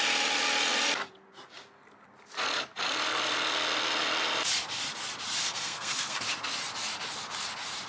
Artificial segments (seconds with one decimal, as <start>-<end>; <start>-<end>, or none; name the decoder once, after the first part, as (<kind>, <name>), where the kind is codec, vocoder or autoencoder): 5.4-6.2 (codec, SNAC)